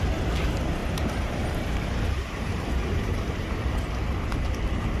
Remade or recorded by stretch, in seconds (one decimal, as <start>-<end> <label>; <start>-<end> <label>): 0.0-0.8 recorded; 0.8-3.8 remade; 3.8-5.0 recorded